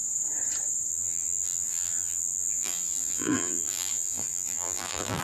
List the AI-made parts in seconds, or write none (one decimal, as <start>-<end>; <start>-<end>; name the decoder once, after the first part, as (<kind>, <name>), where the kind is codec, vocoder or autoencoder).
0.9-5.2 (vocoder, BigVGAN v2)